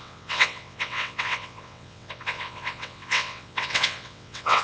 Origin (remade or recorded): remade